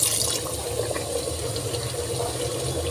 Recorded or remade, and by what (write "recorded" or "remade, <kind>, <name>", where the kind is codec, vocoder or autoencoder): recorded